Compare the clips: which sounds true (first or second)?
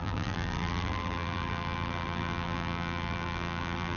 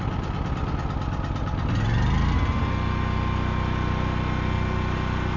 second